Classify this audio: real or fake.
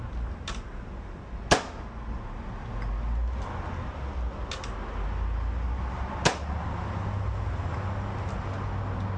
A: real